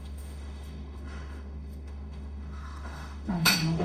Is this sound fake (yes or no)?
yes